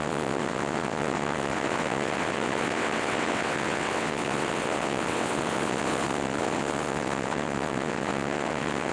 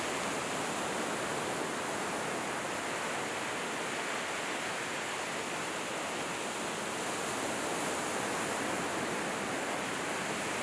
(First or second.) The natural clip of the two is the second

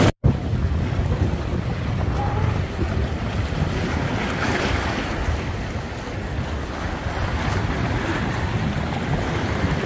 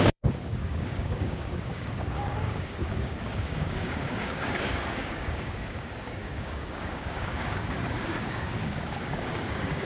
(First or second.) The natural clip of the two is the first